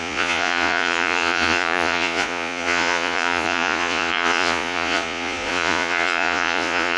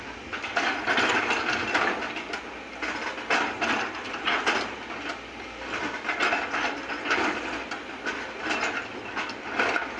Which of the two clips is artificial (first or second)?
first